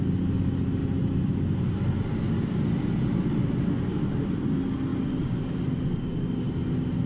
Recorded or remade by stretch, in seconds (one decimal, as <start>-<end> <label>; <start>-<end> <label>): 0.0-7.1 recorded